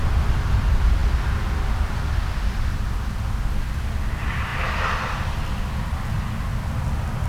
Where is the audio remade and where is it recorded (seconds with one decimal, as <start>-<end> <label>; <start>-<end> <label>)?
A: 0.0-7.3 recorded